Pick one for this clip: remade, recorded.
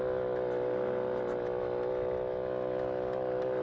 recorded